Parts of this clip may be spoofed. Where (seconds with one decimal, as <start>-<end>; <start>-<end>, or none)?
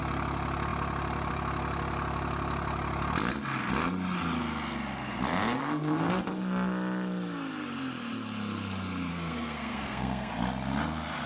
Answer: 5.6-6.1; 9.1-10.3